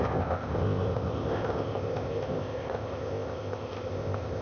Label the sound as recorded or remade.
remade